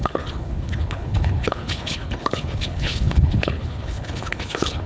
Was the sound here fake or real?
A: fake